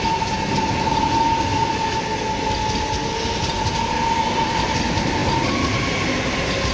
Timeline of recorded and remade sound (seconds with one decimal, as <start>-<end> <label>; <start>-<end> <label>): 0.0-6.7 recorded